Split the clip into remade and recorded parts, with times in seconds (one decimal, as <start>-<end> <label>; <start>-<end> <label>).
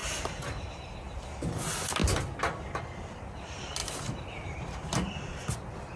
0.0-6.0 recorded